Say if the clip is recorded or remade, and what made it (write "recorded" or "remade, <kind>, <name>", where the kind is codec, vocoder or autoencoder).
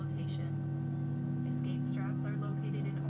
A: recorded